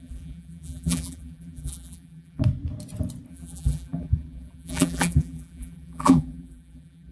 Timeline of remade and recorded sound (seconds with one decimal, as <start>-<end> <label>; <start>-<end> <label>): 0.0-2.4 remade; 2.4-3.3 recorded; 3.3-7.1 remade